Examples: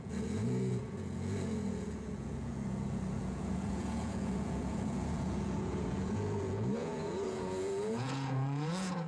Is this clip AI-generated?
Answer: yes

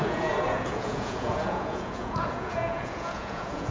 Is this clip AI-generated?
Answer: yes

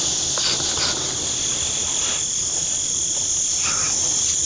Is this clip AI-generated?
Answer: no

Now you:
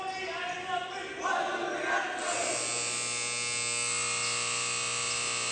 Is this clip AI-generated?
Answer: no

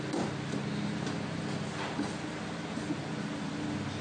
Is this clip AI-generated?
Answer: no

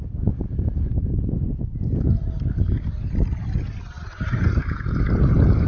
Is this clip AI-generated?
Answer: no